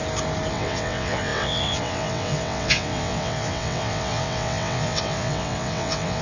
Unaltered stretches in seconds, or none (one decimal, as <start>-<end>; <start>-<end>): 0.0-0.5